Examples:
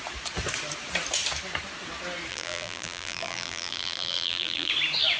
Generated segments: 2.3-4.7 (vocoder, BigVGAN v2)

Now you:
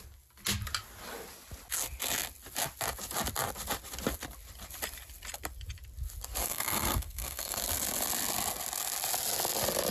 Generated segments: 6.4-7.6 (codec, SNAC)

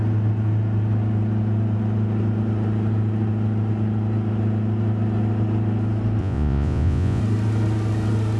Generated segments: 6.2-7.2 (vocoder, Vocos)

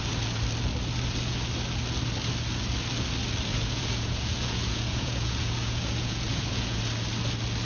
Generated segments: 3.5-6.8 (vocoder, Vocos)

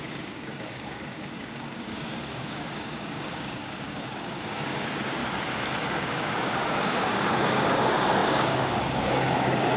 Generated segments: 0.0-5.2 (codec, DAC); 5.9-9.8

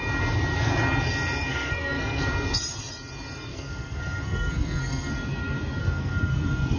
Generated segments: 1.5-2.2 (codec, SNAC); 3.5-5.1; 5.8-6.8